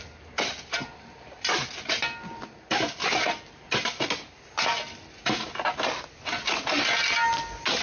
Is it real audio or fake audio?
real